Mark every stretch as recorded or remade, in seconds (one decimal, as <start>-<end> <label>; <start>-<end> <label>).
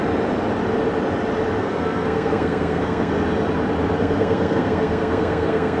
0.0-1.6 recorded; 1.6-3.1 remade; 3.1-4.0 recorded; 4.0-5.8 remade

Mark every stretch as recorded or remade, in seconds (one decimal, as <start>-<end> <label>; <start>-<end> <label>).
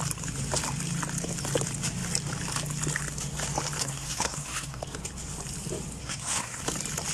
0.0-3.8 recorded; 3.8-4.8 remade; 4.8-6.0 recorded; 6.0-6.6 remade; 6.6-7.1 recorded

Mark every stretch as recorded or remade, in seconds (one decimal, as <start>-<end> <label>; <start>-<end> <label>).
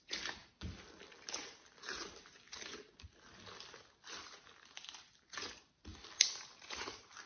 0.0-7.3 recorded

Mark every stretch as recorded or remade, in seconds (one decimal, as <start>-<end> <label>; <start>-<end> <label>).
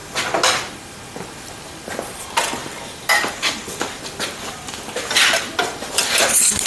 0.0-6.7 recorded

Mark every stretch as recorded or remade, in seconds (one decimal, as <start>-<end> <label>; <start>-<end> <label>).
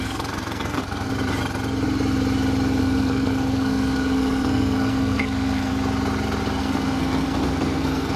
0.0-1.1 remade; 1.1-2.8 recorded; 2.8-5.7 remade; 5.7-6.6 recorded; 6.6-8.2 remade